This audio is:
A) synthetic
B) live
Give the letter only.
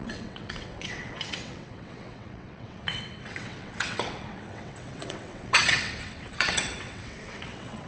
A